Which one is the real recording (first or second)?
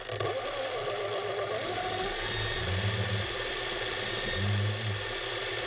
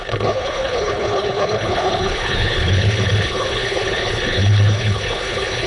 first